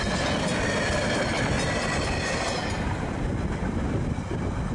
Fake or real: real